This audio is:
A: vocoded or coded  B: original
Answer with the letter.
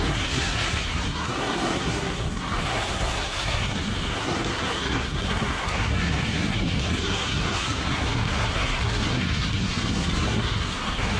A